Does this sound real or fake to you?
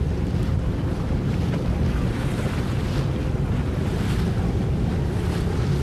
real